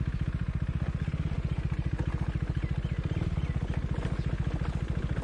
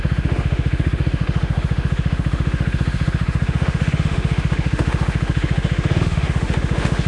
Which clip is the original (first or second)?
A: first